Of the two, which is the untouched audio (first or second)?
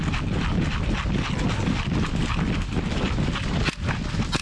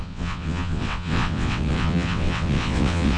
first